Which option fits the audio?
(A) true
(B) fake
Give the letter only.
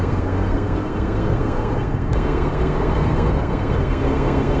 B